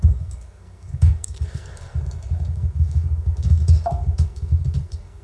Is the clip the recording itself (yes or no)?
no